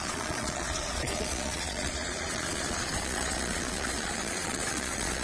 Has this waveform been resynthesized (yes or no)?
yes